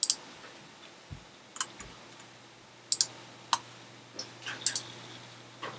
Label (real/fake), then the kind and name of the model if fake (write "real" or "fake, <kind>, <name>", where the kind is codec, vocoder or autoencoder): real